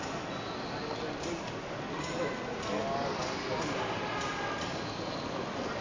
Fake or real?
real